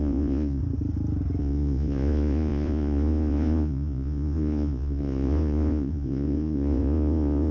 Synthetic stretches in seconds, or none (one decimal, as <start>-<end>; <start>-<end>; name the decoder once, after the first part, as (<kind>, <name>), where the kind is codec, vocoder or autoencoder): 0.0-0.6 (vocoder, Vocos); 1.4-7.5